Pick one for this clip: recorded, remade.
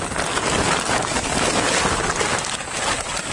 recorded